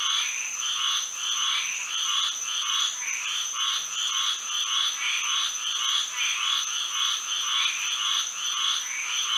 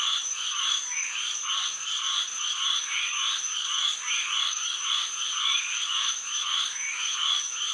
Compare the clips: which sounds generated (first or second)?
second